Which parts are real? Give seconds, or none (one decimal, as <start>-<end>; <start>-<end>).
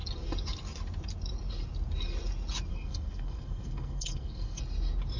0.0-2.7; 4.6-5.2